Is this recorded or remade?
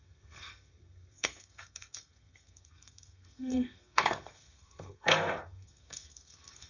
remade